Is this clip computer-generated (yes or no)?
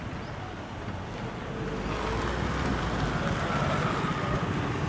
no